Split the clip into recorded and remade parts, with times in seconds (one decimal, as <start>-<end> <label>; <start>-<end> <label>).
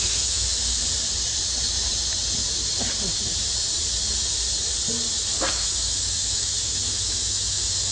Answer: 0.0-0.8 remade; 0.8-5.5 recorded; 5.5-7.9 remade